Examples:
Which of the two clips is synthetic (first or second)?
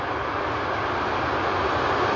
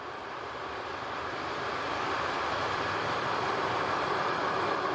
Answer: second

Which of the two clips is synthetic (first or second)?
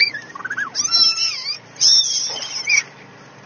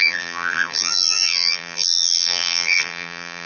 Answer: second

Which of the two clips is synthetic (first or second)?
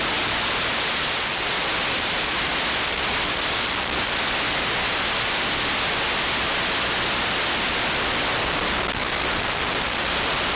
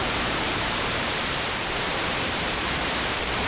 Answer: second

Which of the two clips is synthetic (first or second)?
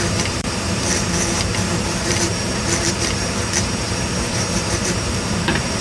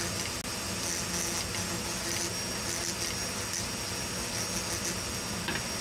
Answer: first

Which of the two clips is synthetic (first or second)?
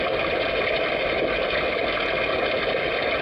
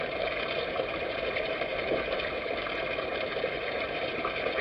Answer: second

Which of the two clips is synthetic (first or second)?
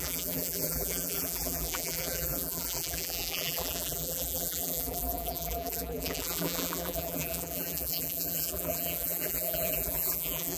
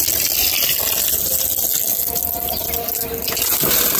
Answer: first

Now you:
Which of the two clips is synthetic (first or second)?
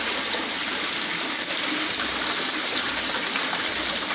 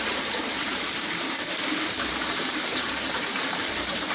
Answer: second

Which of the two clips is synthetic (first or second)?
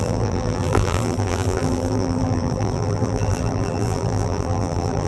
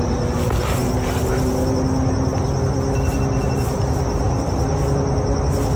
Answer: first